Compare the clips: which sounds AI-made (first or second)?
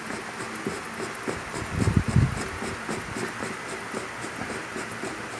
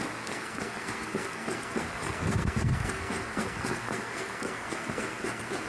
second